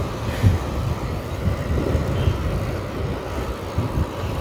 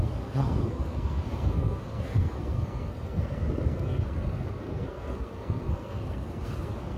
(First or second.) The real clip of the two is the first